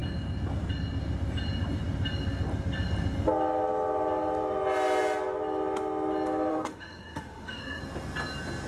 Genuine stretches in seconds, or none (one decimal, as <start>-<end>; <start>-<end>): 0.0-6.5; 7.8-8.7